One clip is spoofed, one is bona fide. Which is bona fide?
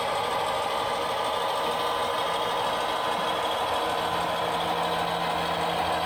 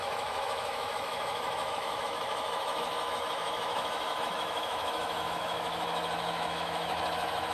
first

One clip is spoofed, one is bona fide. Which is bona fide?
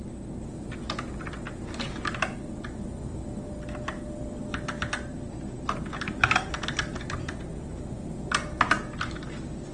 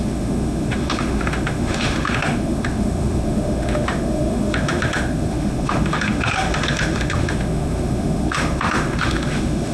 first